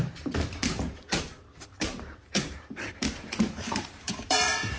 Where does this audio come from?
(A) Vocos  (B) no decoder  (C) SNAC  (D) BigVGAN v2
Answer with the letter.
D